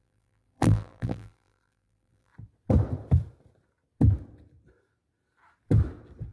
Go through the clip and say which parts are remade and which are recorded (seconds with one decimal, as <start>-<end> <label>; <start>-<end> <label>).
0.0-2.3 remade; 2.3-6.3 recorded